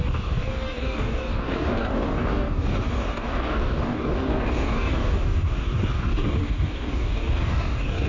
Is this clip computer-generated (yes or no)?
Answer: yes